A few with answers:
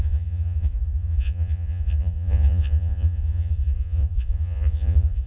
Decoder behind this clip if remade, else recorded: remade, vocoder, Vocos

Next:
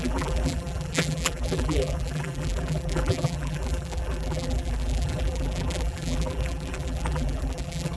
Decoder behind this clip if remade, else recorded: remade, vocoder, BigVGAN v2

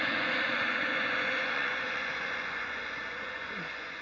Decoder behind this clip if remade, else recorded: remade, vocoder, Vocos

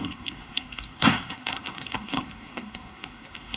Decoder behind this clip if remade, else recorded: remade, codec, SNAC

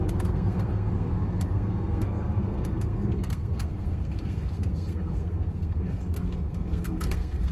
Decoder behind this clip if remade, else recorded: remade, codec, SNAC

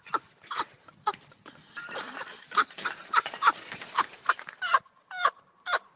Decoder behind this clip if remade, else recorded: remade, vocoder, BigVGAN v2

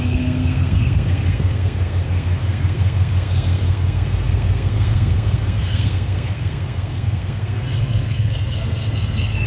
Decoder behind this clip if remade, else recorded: remade, codec, SNAC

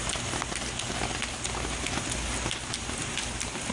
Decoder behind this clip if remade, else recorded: recorded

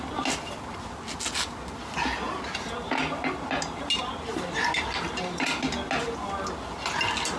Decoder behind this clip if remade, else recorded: recorded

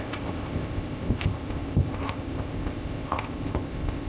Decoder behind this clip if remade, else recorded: remade, codec, ZipCodec